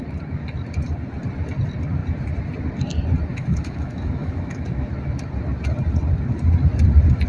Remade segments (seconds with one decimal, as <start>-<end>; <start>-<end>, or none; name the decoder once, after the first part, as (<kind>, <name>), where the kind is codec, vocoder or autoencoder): 3.3-4.9 (autoencoder, DAC-VAE)

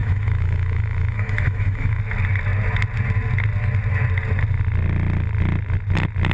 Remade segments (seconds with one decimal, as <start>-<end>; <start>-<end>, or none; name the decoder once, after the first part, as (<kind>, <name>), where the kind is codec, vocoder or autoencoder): 0.0-2.0 (autoencoder, DAC-VAE)

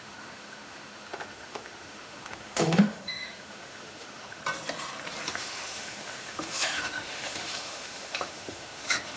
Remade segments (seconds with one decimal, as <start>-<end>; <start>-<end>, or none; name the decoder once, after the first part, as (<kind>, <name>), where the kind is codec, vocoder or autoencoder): 0.0-4.4 (autoencoder, DAC-VAE); 5.3-9.2

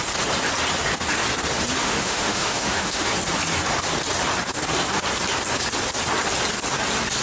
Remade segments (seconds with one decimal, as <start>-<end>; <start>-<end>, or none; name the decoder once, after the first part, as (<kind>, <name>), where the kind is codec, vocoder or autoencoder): 1.8-3.1 (autoencoder, DAC-VAE)

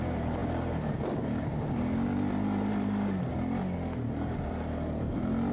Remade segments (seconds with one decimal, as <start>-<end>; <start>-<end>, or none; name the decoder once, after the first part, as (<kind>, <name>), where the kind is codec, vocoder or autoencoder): none

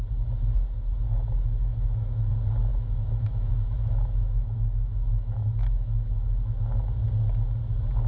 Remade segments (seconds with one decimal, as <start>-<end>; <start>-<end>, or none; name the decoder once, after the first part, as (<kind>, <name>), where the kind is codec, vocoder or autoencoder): 1.7-2.3 (autoencoder, DAC-VAE); 2.7-6.6

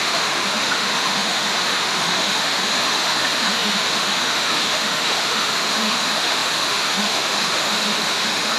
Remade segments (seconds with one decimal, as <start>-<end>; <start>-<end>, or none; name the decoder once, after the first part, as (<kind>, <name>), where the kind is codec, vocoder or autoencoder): 0.0-8.6 (autoencoder, DAC-VAE)

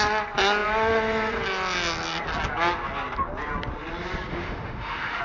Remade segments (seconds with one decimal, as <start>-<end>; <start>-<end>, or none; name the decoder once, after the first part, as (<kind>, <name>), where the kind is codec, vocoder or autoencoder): 4.3-5.2 (autoencoder, DAC-VAE)